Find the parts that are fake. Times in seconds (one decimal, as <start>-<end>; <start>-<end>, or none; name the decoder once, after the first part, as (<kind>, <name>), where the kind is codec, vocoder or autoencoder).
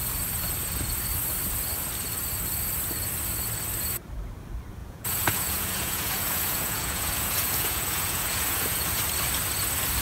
4.8-9.0 (vocoder, Vocos)